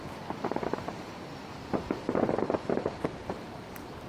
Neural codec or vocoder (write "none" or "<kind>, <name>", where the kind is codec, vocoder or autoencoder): vocoder, BigVGAN v2